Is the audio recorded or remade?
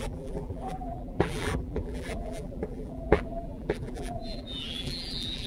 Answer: remade